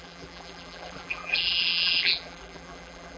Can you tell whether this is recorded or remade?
remade